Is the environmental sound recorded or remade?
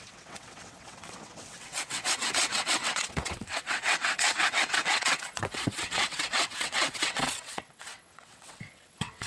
remade